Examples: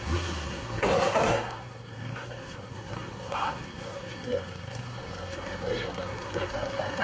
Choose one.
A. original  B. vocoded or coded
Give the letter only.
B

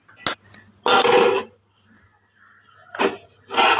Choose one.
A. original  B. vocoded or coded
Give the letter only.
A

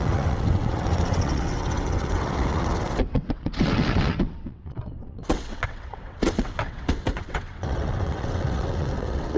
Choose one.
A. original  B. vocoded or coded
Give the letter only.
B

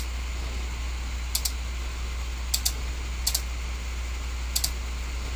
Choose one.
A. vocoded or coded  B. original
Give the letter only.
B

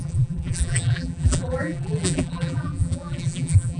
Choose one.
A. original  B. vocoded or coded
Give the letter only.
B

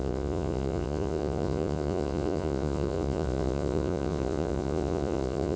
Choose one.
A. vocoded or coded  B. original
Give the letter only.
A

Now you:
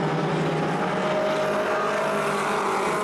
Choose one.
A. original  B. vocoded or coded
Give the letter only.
A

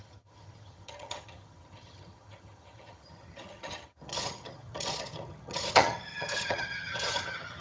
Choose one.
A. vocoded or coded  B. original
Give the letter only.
A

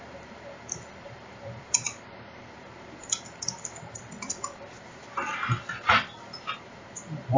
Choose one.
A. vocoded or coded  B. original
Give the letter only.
A